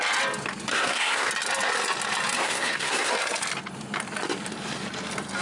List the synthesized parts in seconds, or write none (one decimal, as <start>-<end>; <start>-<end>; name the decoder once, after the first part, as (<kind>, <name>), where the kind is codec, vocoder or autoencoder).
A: 0.7-1.3 (codec, SNAC); 2.4-3.1